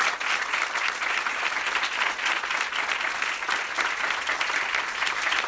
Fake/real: real